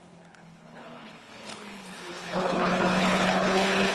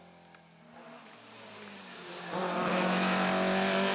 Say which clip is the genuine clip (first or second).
second